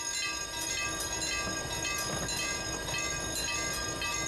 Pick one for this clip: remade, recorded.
recorded